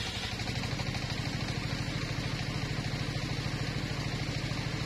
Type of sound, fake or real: real